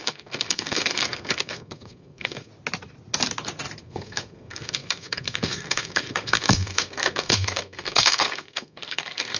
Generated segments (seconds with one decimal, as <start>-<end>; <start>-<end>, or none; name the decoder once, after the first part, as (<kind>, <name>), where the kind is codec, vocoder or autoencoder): 0.0-2.5 (codec, SNAC); 3.8-9.4